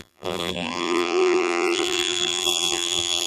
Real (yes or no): no